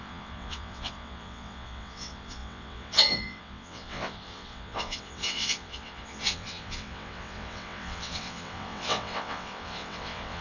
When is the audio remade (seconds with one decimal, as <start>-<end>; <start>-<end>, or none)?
0.0-10.4